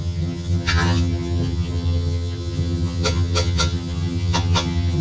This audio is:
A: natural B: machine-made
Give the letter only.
B